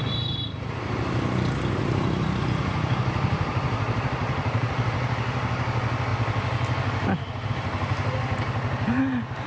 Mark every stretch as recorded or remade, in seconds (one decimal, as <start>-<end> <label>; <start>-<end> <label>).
0.0-4.2 recorded; 4.2-4.8 remade; 4.8-9.5 recorded